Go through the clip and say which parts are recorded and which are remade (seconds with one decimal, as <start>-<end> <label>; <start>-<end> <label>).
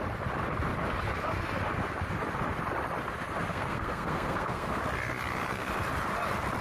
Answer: 0.0-3.5 recorded; 3.5-4.8 remade; 4.8-6.6 recorded